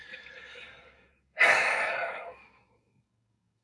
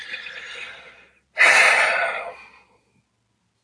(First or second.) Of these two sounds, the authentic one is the second